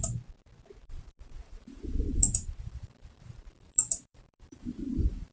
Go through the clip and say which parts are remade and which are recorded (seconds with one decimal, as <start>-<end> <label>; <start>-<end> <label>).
0.0-5.3 remade